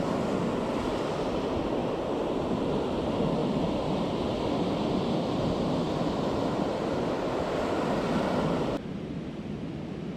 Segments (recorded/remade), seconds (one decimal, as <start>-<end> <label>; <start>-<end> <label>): 0.0-3.4 recorded; 3.4-4.1 remade; 4.1-10.2 recorded